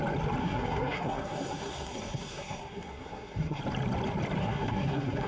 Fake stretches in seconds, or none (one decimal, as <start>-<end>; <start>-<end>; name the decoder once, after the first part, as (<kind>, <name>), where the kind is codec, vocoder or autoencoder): 0.4-3.6 (codec, SNAC); 4.4-5.3